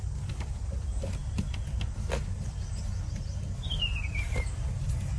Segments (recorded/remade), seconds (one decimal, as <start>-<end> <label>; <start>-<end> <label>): 0.0-5.2 recorded